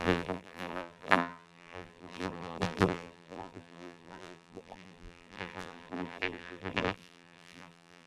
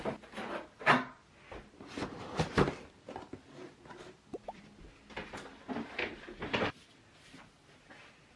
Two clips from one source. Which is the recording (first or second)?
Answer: second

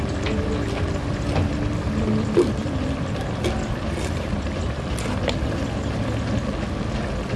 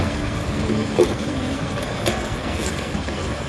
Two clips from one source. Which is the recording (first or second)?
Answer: first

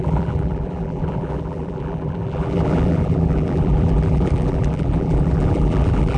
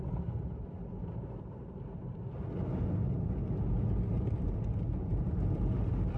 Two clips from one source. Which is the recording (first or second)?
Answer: second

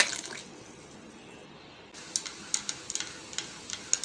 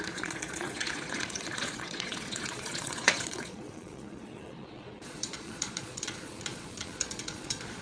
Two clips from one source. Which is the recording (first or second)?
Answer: first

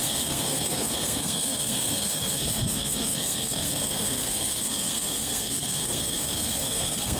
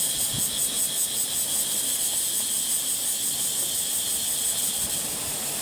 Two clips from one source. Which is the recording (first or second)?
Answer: second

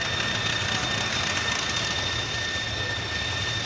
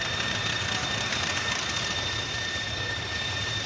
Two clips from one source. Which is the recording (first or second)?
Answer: first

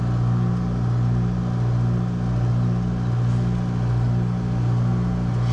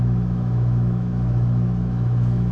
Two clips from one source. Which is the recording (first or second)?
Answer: first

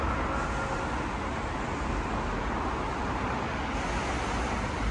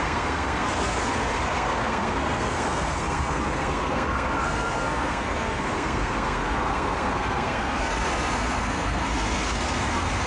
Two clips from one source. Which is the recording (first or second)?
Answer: first